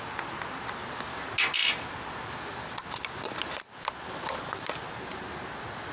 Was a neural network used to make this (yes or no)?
no